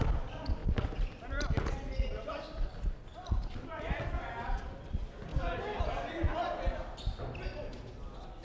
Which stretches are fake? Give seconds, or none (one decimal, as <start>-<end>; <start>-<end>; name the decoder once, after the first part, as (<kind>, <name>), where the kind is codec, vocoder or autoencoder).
3.1-4.0 (vocoder, BigVGAN v2); 5.3-5.8